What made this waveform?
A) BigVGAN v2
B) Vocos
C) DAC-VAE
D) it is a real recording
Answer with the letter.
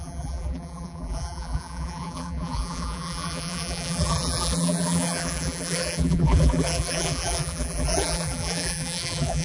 A